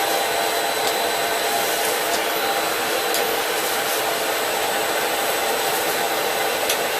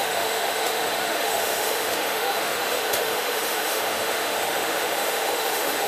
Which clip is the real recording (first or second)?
first